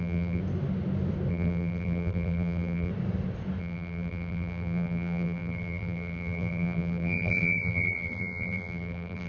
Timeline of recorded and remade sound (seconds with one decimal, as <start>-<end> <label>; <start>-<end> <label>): 0.0-0.4 remade; 0.4-1.3 recorded; 1.3-2.9 remade; 2.9-3.6 recorded; 3.6-9.3 remade